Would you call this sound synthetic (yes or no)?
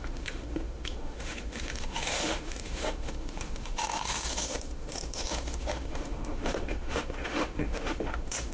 yes